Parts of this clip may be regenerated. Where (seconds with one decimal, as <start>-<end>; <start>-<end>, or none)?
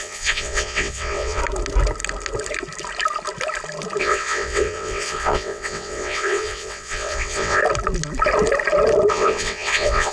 0.0-1.4; 4.0-7.6; 9.1-10.1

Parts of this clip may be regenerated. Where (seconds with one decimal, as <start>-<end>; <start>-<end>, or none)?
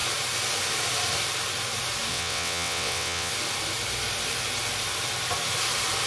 2.1-3.3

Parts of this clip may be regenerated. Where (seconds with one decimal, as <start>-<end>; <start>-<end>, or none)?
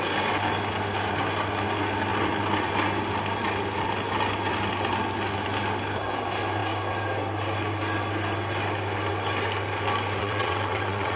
10.2-11.2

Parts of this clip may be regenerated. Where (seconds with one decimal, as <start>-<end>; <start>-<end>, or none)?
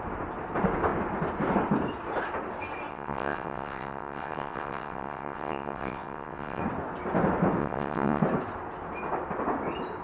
2.9-6.6; 7.6-8.2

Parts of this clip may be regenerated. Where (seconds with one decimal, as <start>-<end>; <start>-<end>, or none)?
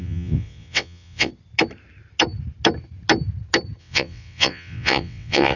0.0-1.3; 3.8-5.6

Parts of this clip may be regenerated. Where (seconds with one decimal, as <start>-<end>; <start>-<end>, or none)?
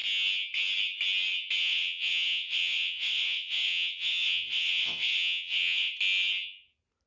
1.6-5.9